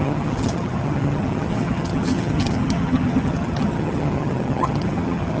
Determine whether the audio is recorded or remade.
remade